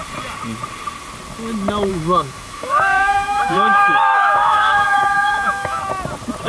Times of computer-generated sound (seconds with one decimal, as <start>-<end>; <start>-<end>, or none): 1.9-5.8